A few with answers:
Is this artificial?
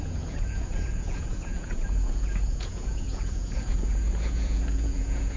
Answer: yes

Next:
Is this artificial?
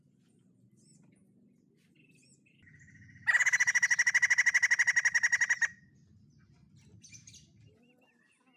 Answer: no